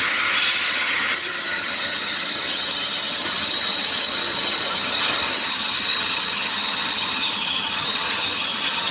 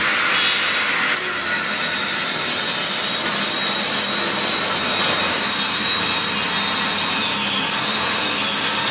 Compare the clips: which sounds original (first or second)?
second